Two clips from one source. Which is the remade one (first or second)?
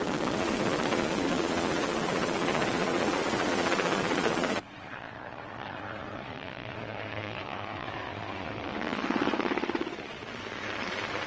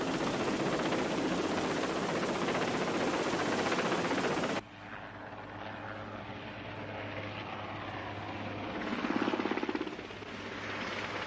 first